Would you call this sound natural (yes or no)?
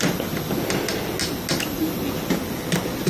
yes